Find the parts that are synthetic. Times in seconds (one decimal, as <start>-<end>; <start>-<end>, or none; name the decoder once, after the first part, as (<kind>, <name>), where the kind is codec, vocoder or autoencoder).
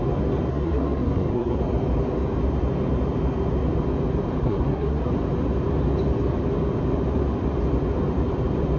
0.5-1.6 (codec, SNAC); 4.4-5.1